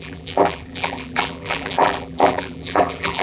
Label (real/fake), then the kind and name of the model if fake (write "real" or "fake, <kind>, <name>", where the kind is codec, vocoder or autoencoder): fake, vocoder, BigVGAN v2